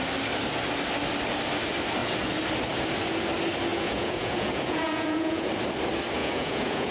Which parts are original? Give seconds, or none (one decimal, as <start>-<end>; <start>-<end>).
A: 0.0-3.7; 5.5-6.2